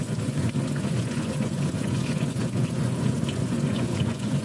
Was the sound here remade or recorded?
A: remade